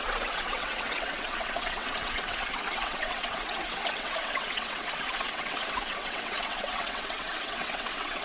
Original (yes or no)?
no